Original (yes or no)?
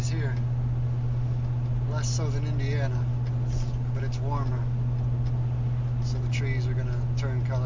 yes